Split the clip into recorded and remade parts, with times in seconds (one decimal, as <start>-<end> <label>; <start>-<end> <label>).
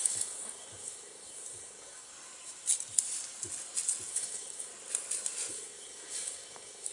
0.0-2.1 remade; 2.1-4.1 recorded; 4.1-4.7 remade; 4.7-5.5 recorded; 5.5-6.9 remade